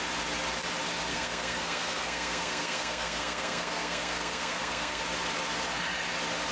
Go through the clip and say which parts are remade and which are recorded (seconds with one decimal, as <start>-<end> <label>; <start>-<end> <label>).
0.0-1.1 recorded; 1.1-5.0 remade; 5.0-6.5 recorded

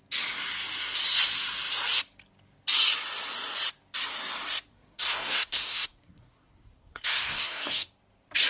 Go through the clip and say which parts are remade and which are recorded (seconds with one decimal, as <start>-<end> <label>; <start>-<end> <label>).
0.0-4.7 recorded; 4.7-7.9 remade; 7.9-8.5 recorded

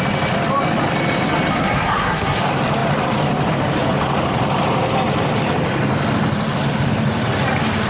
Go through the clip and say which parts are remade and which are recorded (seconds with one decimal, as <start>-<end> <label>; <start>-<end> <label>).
0.0-1.5 recorded; 1.5-2.4 remade; 2.4-7.9 recorded

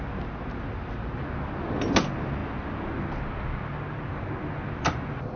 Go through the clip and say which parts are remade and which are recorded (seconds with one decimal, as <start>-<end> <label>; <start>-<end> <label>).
0.0-5.4 recorded